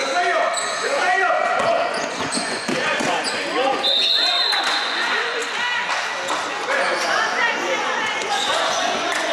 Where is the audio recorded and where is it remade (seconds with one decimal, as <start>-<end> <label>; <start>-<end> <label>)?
0.0-0.6 recorded; 0.6-5.4 remade; 5.4-6.5 recorded; 6.5-9.3 remade